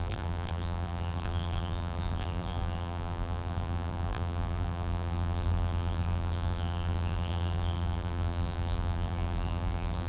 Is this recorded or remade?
remade